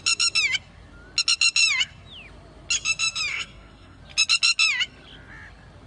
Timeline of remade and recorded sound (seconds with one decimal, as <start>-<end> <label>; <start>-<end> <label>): 0.0-3.3 recorded; 3.3-4.0 remade; 4.0-5.9 recorded

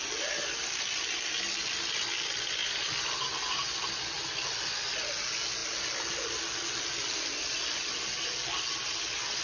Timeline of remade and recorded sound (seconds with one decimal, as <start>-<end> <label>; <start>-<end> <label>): 0.0-9.4 recorded

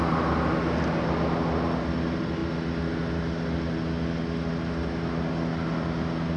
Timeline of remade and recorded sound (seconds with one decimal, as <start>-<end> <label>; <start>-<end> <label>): 0.0-6.4 recorded

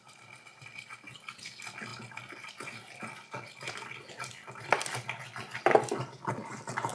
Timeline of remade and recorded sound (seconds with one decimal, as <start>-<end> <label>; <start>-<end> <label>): 0.0-6.9 recorded

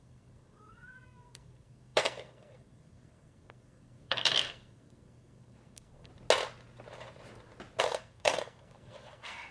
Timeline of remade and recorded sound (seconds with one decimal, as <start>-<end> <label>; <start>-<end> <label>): 0.0-6.1 remade; 6.1-7.8 recorded; 7.8-9.5 remade

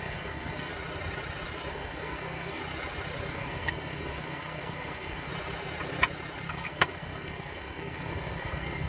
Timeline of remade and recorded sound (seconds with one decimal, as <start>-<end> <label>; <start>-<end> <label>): 0.0-0.7 remade; 0.7-1.7 recorded; 1.7-2.6 remade; 2.6-3.3 recorded; 3.3-5.3 remade; 5.3-6.5 recorded; 6.5-8.9 remade

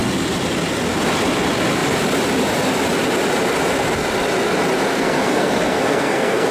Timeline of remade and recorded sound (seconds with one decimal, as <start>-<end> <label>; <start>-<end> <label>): 0.0-4.9 recorded; 4.9-6.5 remade